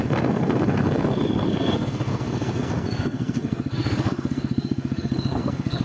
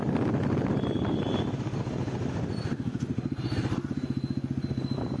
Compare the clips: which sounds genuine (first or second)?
second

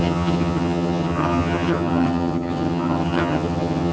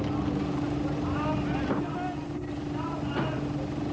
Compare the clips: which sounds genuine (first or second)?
second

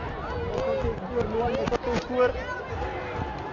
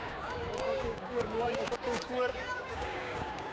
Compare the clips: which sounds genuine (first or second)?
first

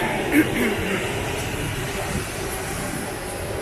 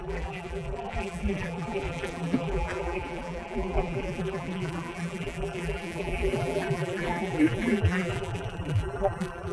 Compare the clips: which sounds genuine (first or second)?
first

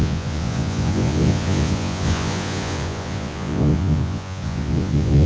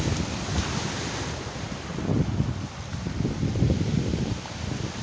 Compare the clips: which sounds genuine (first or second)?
second